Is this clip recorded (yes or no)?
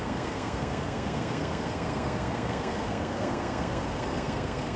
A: no